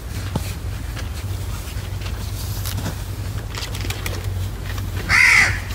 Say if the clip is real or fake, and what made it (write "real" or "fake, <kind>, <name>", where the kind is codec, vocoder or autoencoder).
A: real